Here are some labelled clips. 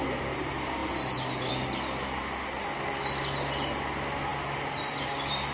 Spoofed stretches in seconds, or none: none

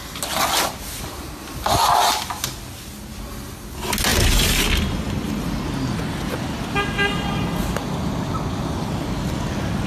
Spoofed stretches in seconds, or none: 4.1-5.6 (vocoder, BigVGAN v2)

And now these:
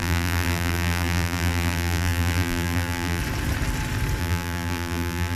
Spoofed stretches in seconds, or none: 0.0-3.2 (vocoder, BigVGAN v2); 4.2-5.4